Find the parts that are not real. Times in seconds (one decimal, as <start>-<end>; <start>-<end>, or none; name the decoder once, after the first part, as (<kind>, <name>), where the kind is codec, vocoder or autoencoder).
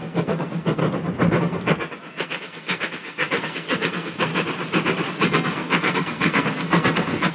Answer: 0.0-0.8 (codec, SNAC); 1.4-4.3; 5.1-7.3